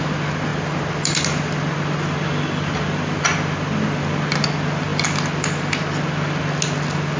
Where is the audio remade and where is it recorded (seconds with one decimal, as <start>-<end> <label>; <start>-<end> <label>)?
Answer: 0.0-7.2 recorded

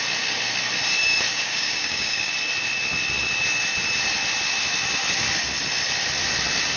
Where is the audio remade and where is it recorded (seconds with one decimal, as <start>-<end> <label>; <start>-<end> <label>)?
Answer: 0.0-1.3 recorded; 1.3-2.3 remade; 2.3-6.8 recorded

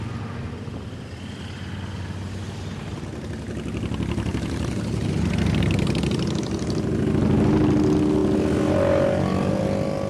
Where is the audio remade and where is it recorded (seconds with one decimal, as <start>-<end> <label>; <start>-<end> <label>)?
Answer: 0.0-10.1 recorded

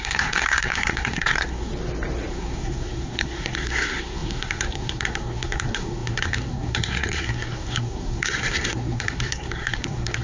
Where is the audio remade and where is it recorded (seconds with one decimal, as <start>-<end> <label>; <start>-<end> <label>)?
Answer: 0.0-1.7 remade; 1.7-2.3 recorded; 2.3-10.2 remade

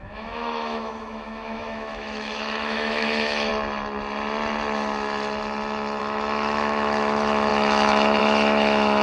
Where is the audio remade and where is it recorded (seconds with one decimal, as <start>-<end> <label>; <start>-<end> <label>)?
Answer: 0.0-3.5 remade; 3.5-6.0 recorded; 6.0-9.0 remade

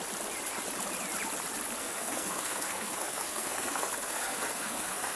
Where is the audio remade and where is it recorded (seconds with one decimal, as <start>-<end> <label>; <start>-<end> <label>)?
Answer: 0.0-1.8 recorded; 1.8-5.2 remade